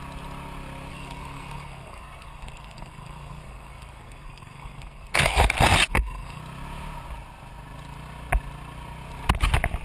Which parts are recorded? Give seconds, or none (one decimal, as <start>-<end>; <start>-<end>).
0.0-0.9; 5.4-5.9; 6.4-9.8